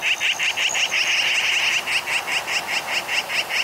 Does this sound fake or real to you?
real